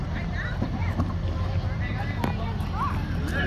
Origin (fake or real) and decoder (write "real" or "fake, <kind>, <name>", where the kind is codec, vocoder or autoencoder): real